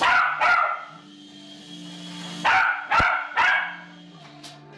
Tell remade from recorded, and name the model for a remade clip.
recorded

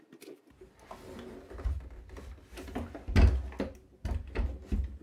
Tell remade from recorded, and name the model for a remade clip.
recorded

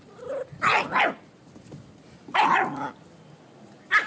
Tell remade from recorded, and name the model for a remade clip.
recorded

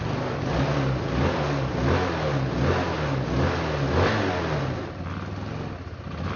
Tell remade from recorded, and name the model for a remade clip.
recorded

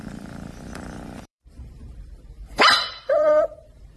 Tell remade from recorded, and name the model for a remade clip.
remade, vocoder, BigVGAN v2